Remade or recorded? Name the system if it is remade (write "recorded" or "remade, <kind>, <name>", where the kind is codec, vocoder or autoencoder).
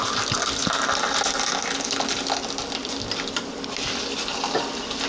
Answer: recorded